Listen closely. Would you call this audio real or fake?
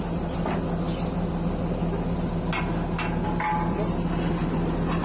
real